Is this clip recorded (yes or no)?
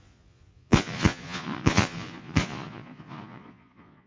no